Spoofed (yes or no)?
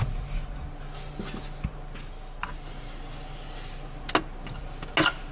no